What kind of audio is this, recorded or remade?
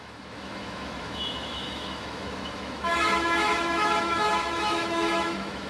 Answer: remade